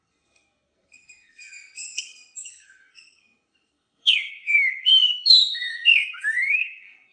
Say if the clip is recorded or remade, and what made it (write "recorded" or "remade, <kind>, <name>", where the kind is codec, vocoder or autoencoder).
remade, codec, SNAC